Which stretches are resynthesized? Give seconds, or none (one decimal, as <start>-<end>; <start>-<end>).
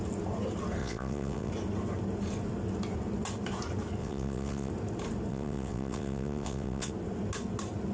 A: 0.8-1.5; 4.0-4.7; 5.3-6.9